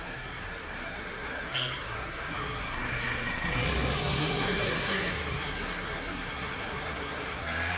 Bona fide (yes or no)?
no